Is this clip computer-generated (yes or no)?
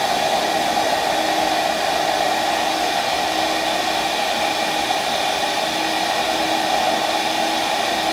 no